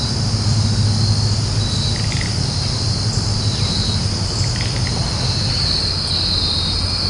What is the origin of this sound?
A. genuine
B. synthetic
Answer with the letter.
A